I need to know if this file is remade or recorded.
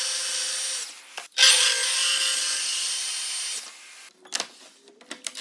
recorded